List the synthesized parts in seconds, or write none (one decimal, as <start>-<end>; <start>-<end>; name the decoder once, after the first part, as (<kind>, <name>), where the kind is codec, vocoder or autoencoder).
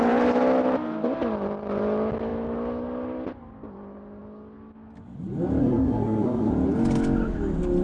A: 5.6-6.5 (codec, SNAC)